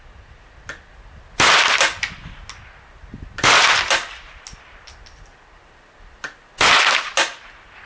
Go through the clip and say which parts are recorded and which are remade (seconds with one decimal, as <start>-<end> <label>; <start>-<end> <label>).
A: 0.0-7.9 recorded